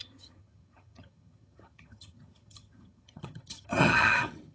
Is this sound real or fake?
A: fake